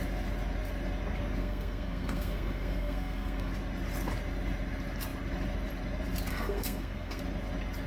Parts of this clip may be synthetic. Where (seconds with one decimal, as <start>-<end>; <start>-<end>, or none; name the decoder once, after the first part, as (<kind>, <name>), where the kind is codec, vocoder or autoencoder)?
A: 1.4-3.5 (codec, SNAC); 6.3-7.2